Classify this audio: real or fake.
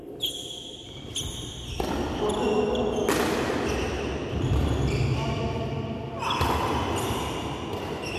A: real